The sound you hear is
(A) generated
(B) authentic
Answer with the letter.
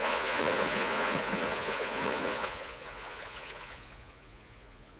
A